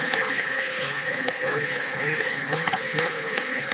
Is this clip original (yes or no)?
no